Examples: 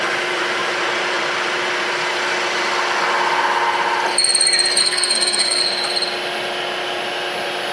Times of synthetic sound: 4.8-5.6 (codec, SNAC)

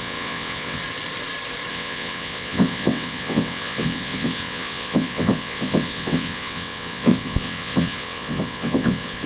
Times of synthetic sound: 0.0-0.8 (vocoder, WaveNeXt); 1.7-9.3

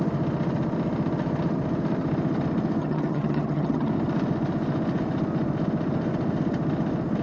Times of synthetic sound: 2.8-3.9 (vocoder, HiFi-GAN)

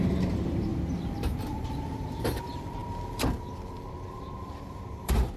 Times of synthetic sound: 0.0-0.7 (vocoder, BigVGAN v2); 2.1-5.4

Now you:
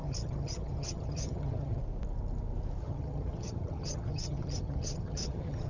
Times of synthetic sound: 0.0-1.8 (vocoder, HiFi-GAN); 2.8-5.7